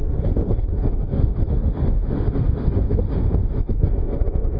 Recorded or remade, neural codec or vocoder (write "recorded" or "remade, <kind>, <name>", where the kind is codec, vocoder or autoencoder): remade, autoencoder, DAC-VAE